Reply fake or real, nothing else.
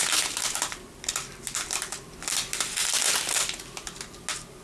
real